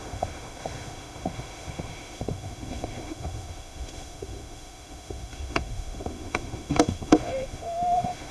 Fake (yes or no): yes